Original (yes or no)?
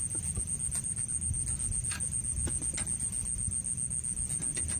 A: yes